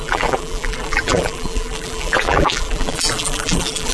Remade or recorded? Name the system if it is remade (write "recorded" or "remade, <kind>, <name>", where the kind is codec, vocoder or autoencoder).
remade, vocoder, BigVGAN v2